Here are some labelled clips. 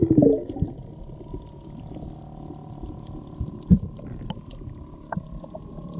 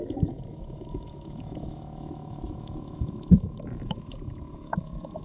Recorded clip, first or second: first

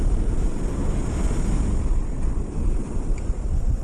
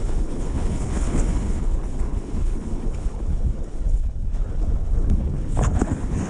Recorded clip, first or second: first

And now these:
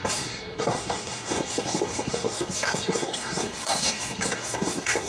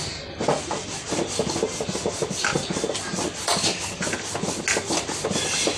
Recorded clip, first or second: second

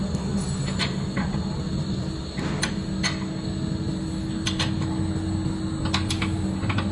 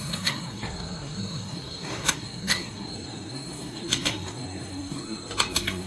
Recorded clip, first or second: first